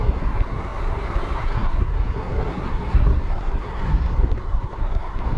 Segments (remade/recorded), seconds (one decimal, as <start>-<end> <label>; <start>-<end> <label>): 0.0-5.4 remade